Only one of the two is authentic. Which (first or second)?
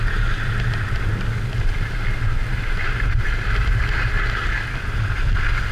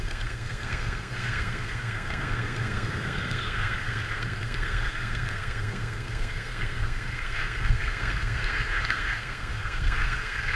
first